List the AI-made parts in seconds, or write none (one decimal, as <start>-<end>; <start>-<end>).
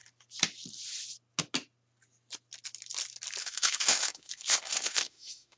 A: 3.4-5.6